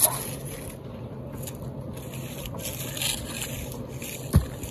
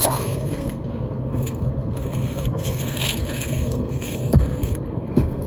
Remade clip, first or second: second